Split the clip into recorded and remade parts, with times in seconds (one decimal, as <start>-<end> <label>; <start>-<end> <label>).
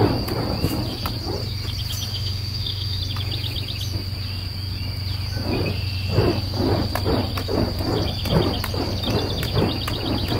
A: 0.0-2.1 recorded; 2.1-3.0 remade; 3.0-10.4 recorded